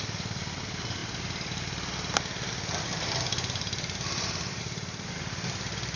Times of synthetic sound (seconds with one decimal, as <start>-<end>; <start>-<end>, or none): none